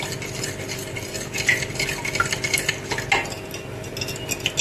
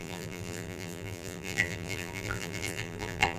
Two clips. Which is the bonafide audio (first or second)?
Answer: first